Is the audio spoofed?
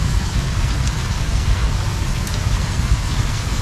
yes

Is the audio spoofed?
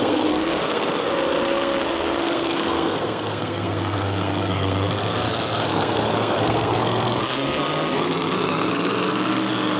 yes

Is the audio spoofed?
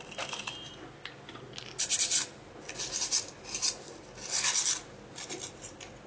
no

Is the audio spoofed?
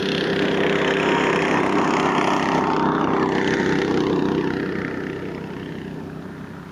no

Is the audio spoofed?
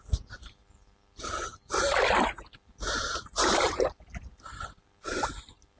no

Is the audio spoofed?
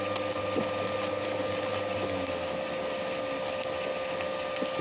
no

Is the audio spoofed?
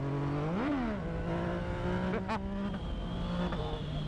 no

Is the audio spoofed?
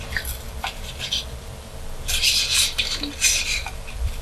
yes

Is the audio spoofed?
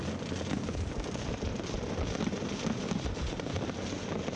no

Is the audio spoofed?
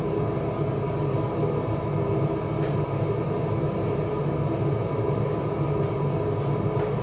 no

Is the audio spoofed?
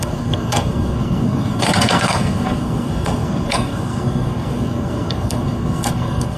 yes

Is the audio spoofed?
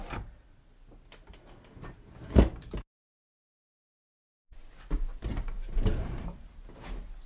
no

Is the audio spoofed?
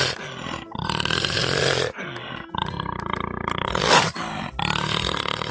no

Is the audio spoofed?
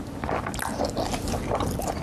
no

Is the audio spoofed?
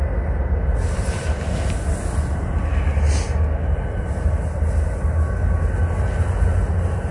no